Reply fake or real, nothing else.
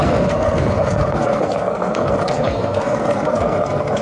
fake